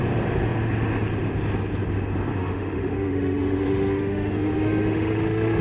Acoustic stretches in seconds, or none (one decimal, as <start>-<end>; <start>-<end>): 0.0-2.3